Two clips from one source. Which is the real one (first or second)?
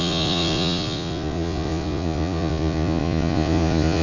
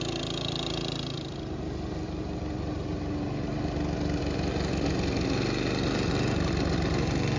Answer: second